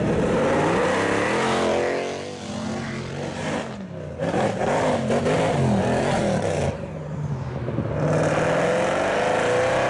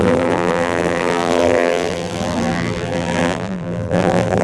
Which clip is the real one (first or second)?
first